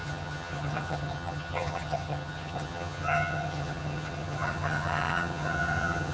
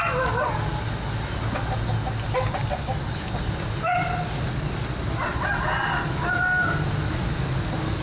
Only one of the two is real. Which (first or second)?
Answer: second